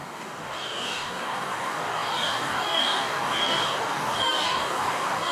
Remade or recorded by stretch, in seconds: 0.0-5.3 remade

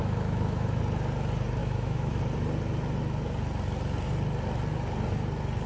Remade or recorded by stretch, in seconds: 0.0-0.8 remade; 0.8-1.6 recorded; 1.6-2.2 remade; 2.2-5.7 recorded